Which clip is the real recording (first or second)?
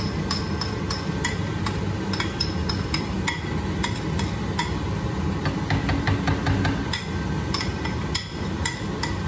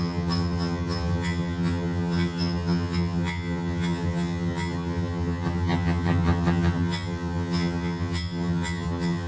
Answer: first